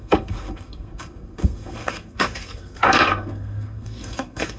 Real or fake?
fake